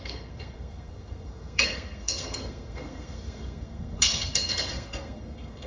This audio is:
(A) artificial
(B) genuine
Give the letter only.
A